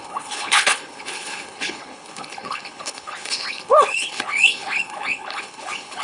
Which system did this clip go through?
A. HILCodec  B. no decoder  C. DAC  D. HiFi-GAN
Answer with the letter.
A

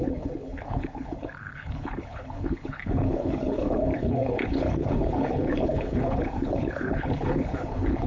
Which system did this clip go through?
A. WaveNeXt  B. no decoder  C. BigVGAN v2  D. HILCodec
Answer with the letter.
D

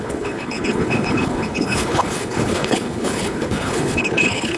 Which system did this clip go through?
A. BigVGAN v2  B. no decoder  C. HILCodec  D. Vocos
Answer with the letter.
C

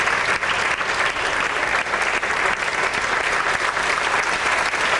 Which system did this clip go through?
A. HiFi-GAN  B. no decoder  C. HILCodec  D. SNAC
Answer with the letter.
B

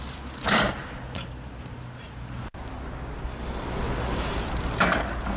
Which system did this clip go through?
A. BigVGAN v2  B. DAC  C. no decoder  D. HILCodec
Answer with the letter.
C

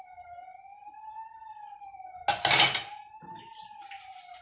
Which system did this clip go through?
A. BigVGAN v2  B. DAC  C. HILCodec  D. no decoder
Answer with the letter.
D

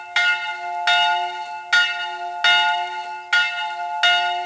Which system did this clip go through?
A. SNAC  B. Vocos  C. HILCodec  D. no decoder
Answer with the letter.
D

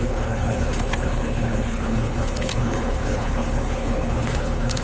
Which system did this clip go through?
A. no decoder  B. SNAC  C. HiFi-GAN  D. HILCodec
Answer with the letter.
D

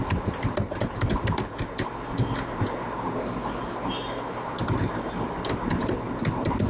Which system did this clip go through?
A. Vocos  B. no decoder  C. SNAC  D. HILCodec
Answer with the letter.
B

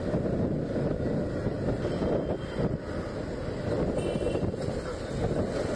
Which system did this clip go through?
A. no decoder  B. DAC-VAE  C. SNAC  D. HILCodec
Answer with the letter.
A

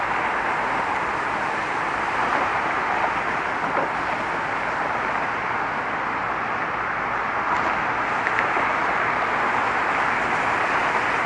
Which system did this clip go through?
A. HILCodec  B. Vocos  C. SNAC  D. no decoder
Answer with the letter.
D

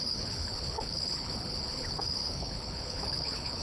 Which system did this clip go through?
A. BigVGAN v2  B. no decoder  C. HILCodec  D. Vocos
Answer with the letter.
C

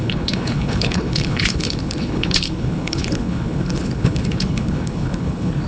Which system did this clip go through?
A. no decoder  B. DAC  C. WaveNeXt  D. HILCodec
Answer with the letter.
D